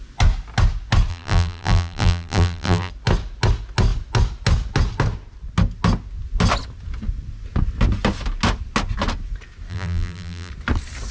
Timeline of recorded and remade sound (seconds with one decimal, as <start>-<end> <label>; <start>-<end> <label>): 0.0-1.1 recorded; 1.1-2.9 remade; 2.9-9.7 recorded; 9.7-10.5 remade; 10.5-11.1 recorded